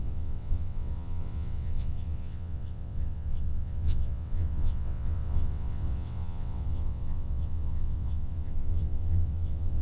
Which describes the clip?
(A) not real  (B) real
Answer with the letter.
A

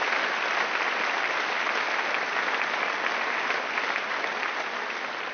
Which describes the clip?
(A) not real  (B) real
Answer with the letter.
B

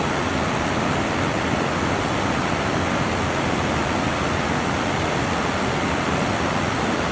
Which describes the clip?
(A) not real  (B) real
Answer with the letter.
B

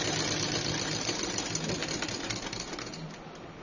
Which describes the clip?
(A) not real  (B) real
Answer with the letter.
B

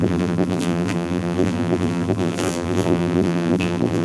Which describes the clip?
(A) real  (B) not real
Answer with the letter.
B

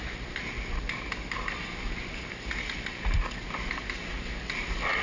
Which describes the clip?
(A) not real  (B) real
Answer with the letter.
B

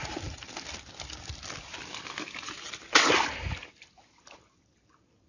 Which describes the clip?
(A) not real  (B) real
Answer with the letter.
B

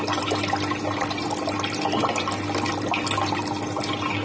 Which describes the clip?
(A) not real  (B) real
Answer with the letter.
B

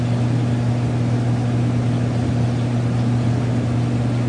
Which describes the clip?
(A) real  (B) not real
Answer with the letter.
A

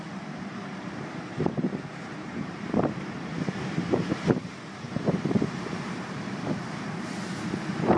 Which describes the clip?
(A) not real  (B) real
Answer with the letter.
A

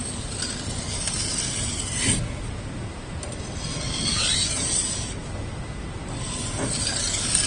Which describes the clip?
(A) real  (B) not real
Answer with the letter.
A